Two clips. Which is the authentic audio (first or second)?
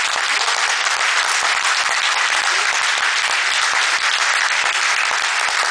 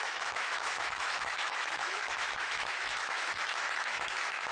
first